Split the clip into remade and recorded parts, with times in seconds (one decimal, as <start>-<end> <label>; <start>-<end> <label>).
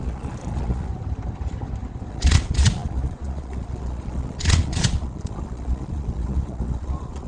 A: 0.0-0.9 remade; 0.9-2.1 recorded; 2.1-7.3 remade